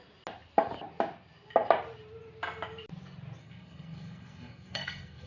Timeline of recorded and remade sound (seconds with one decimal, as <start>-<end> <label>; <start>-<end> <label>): 0.0-3.4 recorded; 3.4-5.3 remade